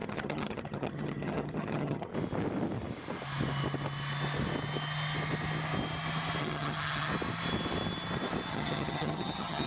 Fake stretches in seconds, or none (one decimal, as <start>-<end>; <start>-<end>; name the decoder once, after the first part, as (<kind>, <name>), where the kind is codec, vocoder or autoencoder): 0.0-2.1 (vocoder, HiFi-GAN); 6.4-7.1; 8.5-9.7